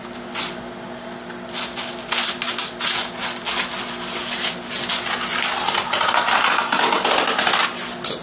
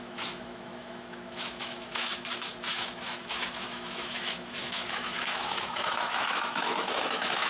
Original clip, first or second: first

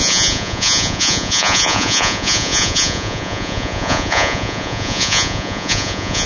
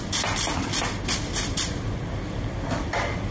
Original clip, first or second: second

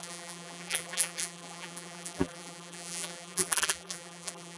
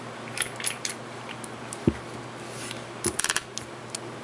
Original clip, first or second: second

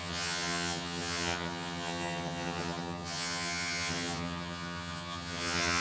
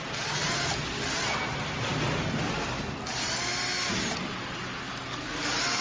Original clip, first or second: second